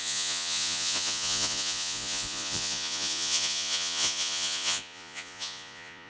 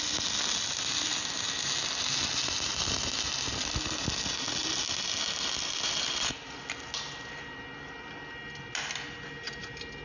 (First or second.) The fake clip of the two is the first